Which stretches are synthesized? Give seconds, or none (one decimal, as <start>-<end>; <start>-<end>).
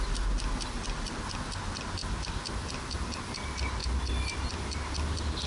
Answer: none